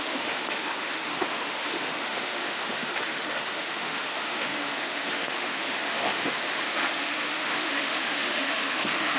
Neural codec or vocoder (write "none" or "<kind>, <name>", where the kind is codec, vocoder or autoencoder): autoencoder, DAC-VAE